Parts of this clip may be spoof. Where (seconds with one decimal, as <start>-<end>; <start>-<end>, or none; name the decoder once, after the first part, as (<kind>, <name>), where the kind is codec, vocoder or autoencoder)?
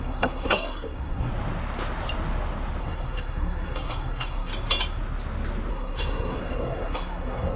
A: 0.0-1.3 (codec, SNAC); 2.8-4.5; 5.7-7.6